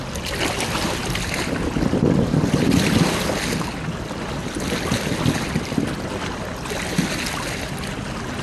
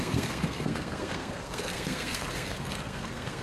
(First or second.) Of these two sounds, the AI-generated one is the second